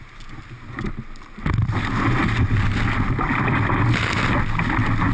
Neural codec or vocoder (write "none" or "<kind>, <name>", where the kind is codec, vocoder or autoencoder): none